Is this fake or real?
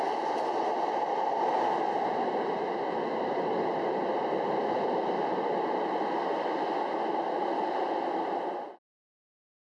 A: real